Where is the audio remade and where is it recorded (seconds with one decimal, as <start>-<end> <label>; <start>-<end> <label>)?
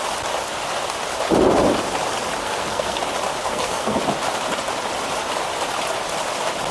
0.0-2.4 recorded; 2.4-3.0 remade; 3.0-3.4 recorded; 3.4-4.0 remade; 4.0-6.7 recorded